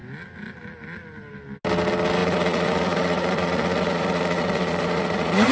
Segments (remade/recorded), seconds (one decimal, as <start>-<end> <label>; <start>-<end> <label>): 0.0-2.2 recorded; 2.2-5.5 remade